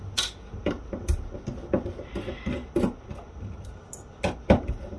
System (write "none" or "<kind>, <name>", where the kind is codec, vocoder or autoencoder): none